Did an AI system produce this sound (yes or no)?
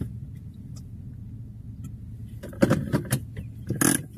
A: no